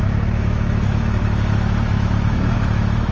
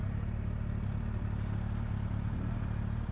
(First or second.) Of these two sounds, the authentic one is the second